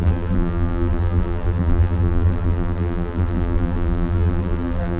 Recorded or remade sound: remade